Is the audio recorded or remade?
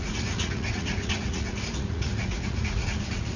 remade